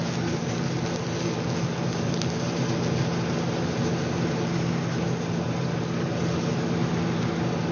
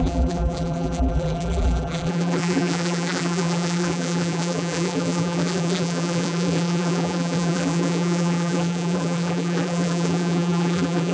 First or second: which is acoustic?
first